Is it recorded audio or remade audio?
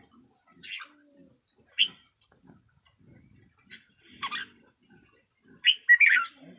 recorded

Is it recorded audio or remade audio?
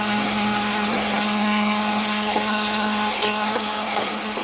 remade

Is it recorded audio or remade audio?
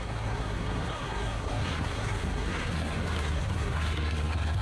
remade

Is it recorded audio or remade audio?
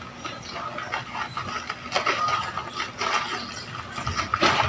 recorded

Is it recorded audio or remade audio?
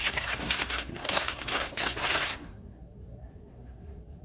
remade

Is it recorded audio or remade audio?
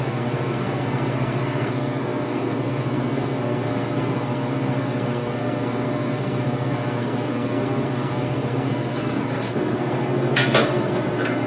remade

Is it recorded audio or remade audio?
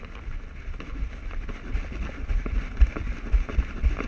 recorded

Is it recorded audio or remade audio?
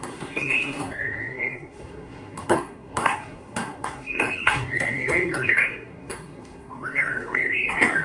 remade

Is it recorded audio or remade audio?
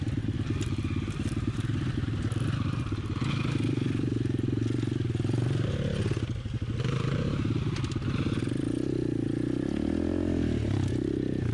recorded